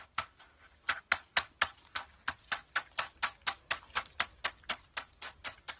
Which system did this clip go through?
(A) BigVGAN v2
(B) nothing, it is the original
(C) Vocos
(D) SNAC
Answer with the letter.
B